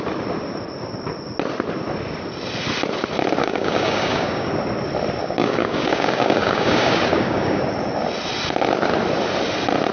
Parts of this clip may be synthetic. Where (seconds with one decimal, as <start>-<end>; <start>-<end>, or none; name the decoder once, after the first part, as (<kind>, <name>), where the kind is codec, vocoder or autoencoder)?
3.4-4.5 (codec, DAC); 5.2-7.6

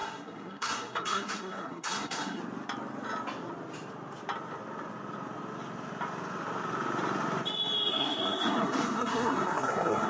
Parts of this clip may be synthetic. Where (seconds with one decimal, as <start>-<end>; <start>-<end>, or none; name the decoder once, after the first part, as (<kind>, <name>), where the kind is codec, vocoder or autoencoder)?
0.0-2.4 (codec, SNAC); 7.9-10.1